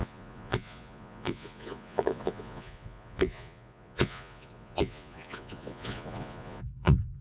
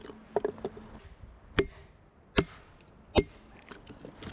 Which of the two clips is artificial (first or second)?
first